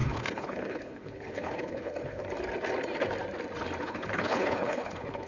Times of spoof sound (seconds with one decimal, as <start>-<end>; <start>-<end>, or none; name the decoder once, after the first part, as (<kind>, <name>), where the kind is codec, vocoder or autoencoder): 0.0-2.2 (codec, HILCodec); 3.8-5.3